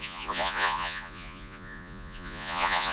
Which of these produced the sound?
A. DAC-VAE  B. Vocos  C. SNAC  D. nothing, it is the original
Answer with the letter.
B